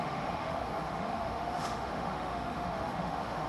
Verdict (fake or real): fake